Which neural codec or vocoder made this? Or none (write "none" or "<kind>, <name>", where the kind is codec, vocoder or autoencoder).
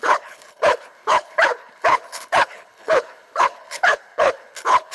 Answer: codec, HILCodec